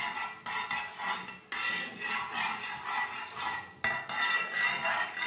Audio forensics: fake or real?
real